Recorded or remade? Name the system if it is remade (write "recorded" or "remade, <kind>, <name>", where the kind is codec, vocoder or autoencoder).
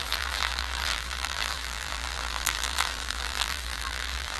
remade, vocoder, BigVGAN v2